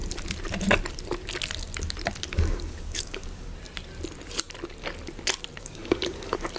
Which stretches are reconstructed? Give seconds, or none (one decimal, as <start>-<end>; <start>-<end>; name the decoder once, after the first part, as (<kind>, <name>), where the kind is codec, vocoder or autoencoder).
2.3-3.5 (codec, DAC); 5.6-6.6